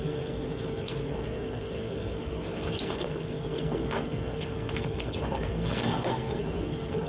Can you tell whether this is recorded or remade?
remade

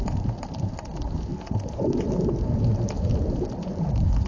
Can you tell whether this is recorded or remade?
recorded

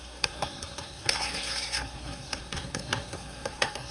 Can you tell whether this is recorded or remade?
remade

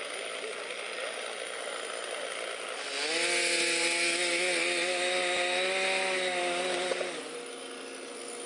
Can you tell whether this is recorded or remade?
recorded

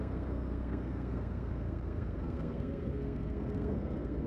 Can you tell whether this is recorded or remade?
remade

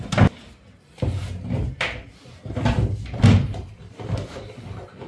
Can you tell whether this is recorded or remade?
recorded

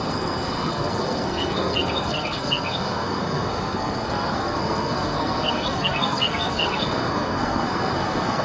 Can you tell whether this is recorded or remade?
remade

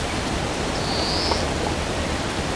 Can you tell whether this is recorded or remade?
recorded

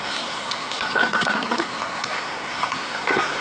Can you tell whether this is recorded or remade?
remade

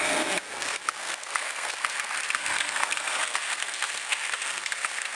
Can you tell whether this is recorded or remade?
remade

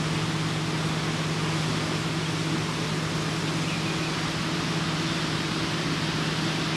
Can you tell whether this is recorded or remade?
recorded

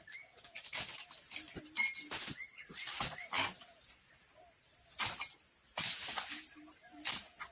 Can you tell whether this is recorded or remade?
recorded